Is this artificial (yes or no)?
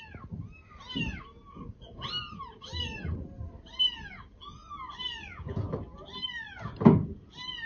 no